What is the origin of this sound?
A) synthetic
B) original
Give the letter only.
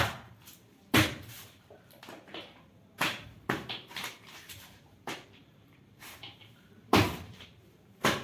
A